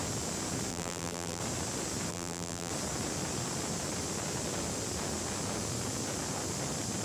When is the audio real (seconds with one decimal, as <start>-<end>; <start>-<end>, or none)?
0.0-0.7; 1.4-2.1; 2.7-7.0